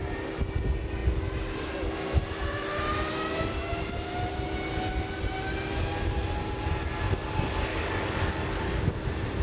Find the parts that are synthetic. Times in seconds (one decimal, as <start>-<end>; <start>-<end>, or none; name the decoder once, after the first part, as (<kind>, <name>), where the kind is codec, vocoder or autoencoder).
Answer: 7.7-8.8 (codec, DAC)